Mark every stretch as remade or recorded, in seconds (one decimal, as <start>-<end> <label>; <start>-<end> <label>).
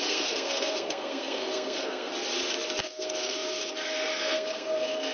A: 0.0-2.1 remade; 2.1-2.8 recorded; 2.8-5.1 remade